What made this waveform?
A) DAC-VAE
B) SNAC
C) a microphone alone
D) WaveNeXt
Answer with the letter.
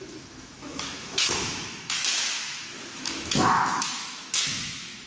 A